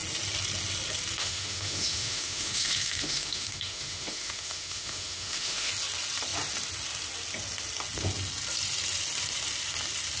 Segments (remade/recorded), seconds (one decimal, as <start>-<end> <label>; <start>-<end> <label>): 0.0-1.2 recorded; 1.2-5.7 remade; 5.7-10.2 recorded

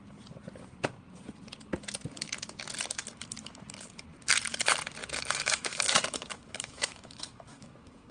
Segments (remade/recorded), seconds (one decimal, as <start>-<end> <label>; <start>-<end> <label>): 0.0-5.0 recorded; 5.0-8.1 remade

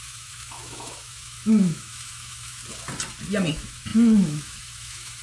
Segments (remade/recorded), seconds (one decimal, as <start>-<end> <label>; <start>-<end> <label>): 0.0-2.6 remade; 2.6-3.5 recorded; 3.5-5.2 remade

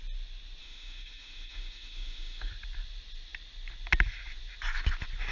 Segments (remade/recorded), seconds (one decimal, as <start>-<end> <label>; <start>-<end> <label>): 0.0-0.6 recorded; 0.6-2.5 remade; 2.5-5.3 recorded

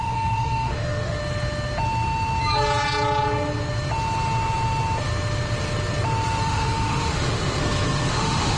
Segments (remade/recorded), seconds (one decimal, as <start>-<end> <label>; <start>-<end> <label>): 0.0-1.2 remade; 1.2-6.4 recorded; 6.4-7.6 remade; 7.6-8.1 recorded; 8.1-8.6 remade

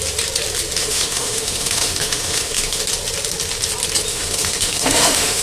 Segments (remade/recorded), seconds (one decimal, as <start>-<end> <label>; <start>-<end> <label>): 0.0-0.8 recorded; 0.8-2.8 remade; 2.8-4.1 recorded; 4.1-5.4 remade

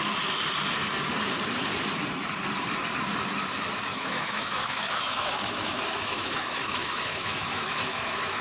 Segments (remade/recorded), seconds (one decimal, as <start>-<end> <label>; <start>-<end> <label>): 0.0-3.9 recorded; 3.9-8.4 remade